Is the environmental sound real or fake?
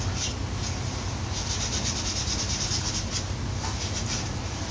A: real